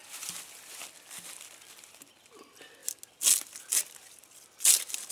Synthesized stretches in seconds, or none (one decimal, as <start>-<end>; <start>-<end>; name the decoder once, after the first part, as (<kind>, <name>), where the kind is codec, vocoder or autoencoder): none